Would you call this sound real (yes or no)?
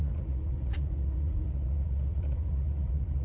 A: no